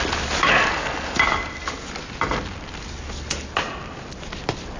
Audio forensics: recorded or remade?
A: recorded